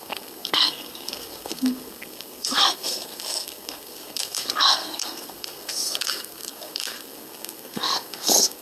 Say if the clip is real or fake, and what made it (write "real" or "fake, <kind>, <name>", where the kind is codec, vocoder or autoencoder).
fake, codec, SNAC